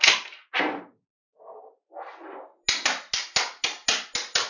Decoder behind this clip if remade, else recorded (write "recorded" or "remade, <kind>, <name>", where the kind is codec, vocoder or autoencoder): recorded